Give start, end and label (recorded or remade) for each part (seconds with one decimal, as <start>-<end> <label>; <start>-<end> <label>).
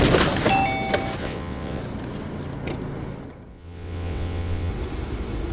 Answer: 0.0-1.2 recorded; 1.2-1.8 remade; 1.8-3.5 recorded; 3.5-4.7 remade; 4.7-5.5 recorded